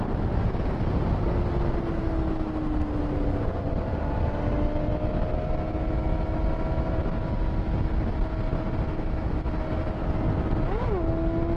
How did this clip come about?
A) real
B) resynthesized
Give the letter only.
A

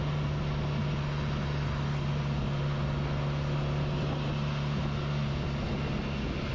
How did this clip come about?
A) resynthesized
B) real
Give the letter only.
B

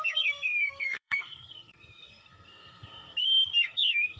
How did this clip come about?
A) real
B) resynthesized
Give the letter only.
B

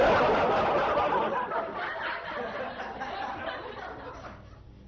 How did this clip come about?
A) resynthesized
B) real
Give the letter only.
B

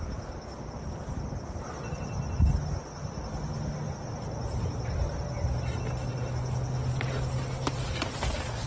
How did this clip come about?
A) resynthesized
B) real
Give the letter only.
B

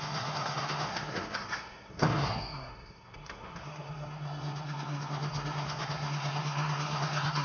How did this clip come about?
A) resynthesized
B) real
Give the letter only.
A